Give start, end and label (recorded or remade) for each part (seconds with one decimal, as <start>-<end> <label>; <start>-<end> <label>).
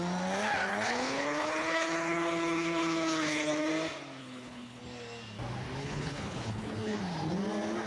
0.0-0.7 recorded; 0.7-3.7 remade; 3.7-4.2 recorded; 4.2-4.8 remade; 4.8-5.8 recorded; 5.8-7.0 remade; 7.0-7.9 recorded